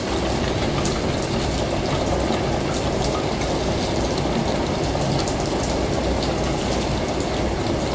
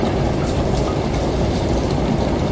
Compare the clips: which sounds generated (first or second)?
second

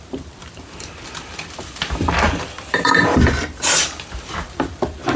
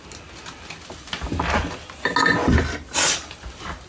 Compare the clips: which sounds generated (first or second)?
first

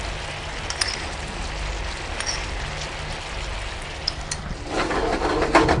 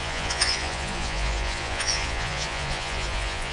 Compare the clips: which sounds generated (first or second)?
second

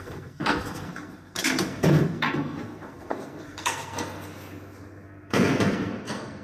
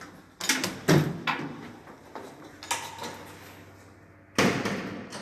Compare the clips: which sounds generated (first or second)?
first